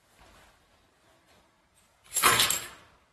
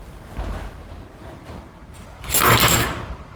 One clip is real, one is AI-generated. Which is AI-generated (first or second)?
first